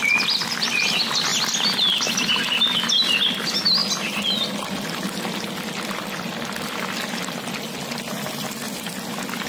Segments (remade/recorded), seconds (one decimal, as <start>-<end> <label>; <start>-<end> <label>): 0.0-9.5 recorded